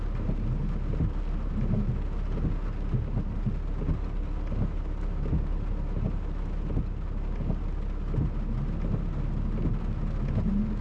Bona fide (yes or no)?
yes